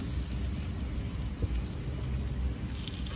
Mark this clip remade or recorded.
recorded